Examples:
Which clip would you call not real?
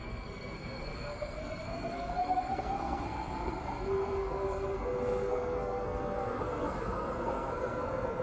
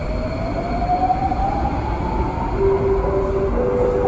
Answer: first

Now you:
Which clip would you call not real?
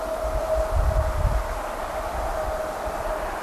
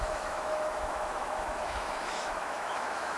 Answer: second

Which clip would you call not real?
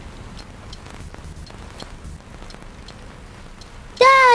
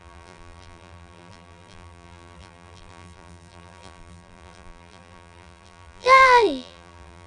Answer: second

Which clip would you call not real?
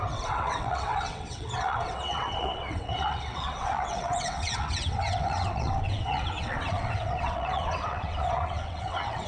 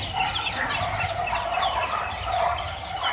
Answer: first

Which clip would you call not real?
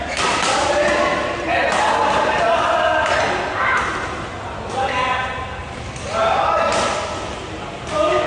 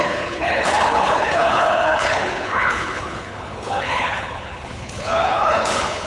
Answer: second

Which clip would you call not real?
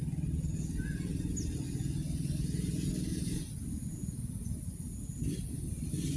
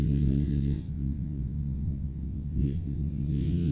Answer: second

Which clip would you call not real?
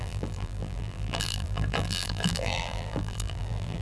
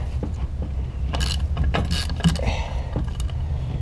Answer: first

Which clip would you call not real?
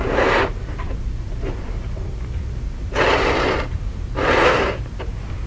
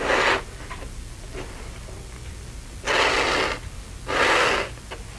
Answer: first